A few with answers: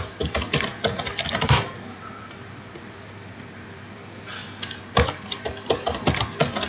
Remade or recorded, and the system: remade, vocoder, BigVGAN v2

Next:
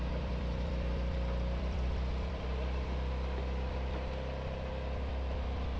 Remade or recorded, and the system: remade, vocoder, BigVGAN v2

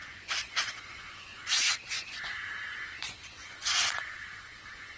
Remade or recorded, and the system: remade, vocoder, Vocos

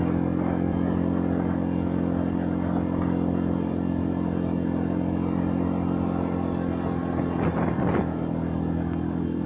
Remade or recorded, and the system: recorded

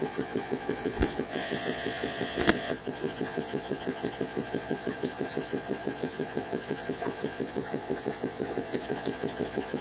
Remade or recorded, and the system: remade, vocoder, Vocos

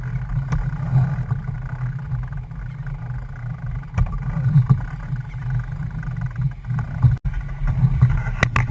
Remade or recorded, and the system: recorded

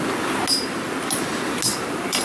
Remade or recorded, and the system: recorded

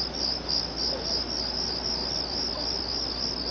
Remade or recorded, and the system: recorded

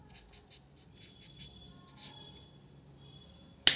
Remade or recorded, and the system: recorded